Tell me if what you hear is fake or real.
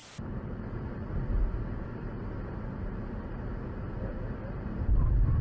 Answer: real